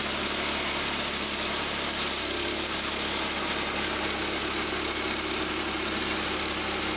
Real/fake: real